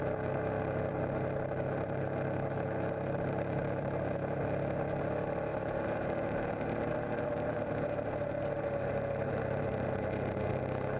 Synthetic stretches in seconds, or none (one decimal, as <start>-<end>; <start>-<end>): 0.9-4.0; 5.5-10.5